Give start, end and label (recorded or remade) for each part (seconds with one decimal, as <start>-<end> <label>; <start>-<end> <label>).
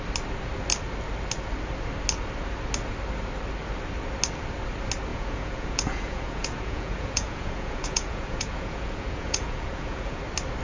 0.0-5.1 recorded; 5.1-10.2 remade; 10.2-10.6 recorded